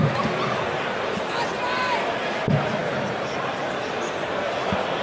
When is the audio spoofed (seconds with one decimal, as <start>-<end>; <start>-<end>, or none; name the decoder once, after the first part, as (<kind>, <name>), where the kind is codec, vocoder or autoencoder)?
none